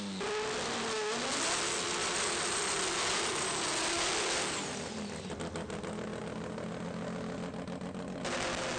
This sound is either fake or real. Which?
real